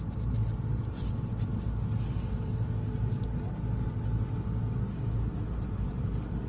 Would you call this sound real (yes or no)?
yes